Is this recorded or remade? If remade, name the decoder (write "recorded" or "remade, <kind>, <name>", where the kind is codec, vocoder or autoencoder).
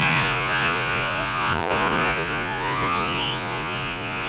remade, vocoder, Vocos